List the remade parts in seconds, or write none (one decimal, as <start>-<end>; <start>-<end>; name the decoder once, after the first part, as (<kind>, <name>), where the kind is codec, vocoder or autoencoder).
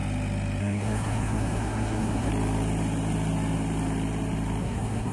0.6-2.3 (codec, SNAC); 4.6-5.1